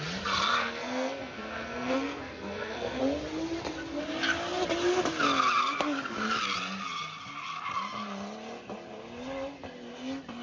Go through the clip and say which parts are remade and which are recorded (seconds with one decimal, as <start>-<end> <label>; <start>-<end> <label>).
0.0-0.6 recorded; 0.6-3.0 remade; 3.0-10.4 recorded

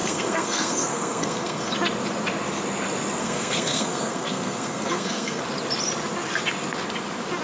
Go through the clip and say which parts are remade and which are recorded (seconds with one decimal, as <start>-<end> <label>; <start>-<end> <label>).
0.0-1.7 remade; 1.7-3.2 recorded; 3.2-5.4 remade; 5.4-7.4 recorded

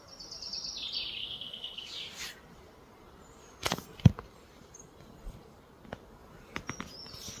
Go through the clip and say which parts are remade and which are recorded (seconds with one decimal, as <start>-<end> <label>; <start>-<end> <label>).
0.0-1.2 recorded; 1.2-1.9 remade; 1.9-7.4 recorded

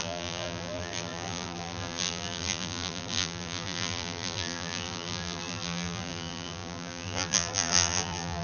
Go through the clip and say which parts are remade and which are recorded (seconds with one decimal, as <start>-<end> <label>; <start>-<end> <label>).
0.0-8.4 remade

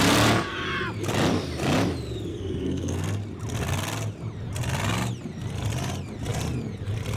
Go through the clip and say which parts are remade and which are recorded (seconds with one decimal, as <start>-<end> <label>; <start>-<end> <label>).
0.0-2.3 recorded; 2.3-3.2 remade; 3.2-7.2 recorded

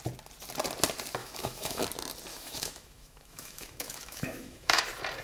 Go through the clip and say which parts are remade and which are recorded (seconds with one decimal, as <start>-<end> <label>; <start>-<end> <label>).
0.0-1.2 recorded; 1.2-1.8 remade; 1.8-2.3 recorded; 2.3-4.8 remade; 4.8-5.2 recorded

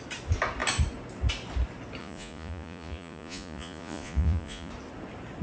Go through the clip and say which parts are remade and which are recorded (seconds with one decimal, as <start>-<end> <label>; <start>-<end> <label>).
0.0-2.0 recorded; 2.0-4.7 remade; 4.7-5.4 recorded

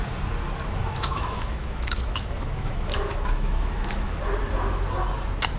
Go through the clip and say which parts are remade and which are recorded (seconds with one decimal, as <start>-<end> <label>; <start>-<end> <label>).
0.0-0.8 recorded; 0.8-4.2 remade; 4.2-5.6 recorded